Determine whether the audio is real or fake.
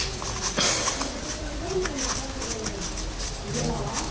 real